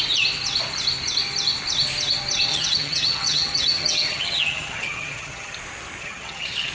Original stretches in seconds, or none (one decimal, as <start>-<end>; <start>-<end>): 0.0-2.5; 5.6-6.0